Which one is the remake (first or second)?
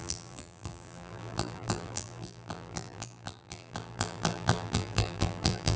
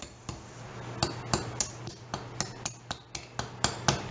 first